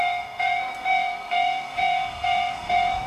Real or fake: fake